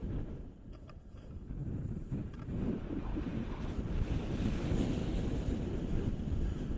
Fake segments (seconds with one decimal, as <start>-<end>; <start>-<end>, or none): 1.6-2.3; 5.0-6.1